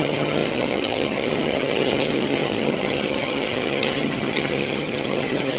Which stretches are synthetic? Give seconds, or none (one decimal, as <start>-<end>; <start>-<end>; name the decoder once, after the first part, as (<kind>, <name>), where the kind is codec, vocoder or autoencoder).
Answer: 0.0-5.6 (vocoder, HiFi-GAN)